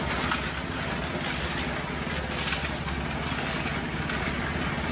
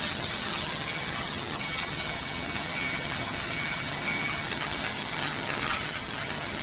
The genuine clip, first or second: first